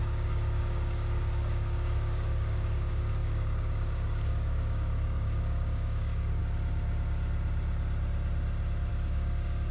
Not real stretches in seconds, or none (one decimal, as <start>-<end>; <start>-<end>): 0.0-6.4; 8.9-9.7